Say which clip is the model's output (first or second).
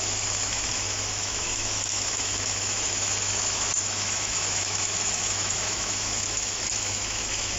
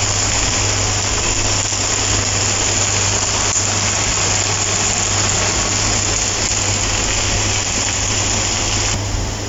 first